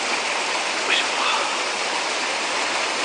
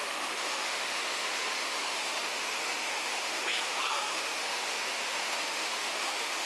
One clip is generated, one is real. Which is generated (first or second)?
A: second